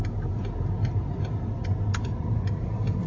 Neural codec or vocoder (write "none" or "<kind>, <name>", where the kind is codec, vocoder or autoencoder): none